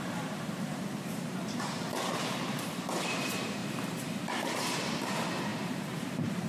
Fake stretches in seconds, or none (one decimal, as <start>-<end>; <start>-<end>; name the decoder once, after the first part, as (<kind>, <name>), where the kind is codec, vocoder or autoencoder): 0.0-3.6 (vocoder, BigVGAN v2); 4.5-6.5

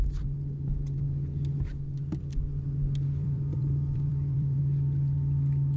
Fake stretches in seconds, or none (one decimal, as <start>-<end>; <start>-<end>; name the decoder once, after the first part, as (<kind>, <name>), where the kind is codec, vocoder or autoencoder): 3.2-4.6 (vocoder, BigVGAN v2)

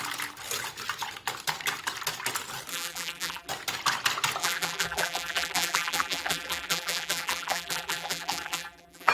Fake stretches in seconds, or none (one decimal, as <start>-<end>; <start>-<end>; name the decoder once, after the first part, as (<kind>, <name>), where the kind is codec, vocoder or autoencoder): 2.7-3.5 (vocoder, BigVGAN v2); 4.4-9.1